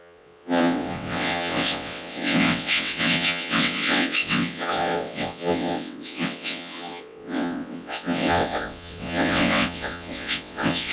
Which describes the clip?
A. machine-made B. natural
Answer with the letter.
A